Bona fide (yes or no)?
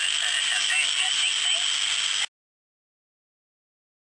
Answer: yes